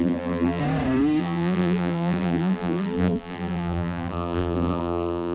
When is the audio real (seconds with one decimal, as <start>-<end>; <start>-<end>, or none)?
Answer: 0.6-1.2